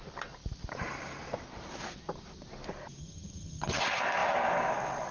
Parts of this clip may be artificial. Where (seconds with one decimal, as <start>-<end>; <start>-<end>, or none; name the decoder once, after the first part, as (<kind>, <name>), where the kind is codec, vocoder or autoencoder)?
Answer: 3.0-3.8 (vocoder, HiFi-GAN)